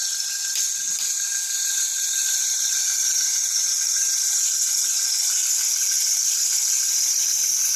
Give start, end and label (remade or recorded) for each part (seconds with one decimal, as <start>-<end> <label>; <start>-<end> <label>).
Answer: 0.0-1.9 recorded; 1.9-4.1 remade; 4.1-7.8 recorded